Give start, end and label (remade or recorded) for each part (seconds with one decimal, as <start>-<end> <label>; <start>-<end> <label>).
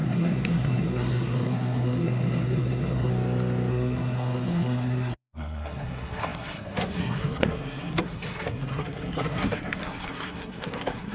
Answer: 0.0-3.1 remade; 3.1-3.7 recorded; 3.7-11.1 remade